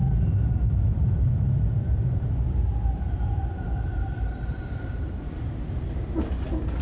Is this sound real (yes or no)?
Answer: no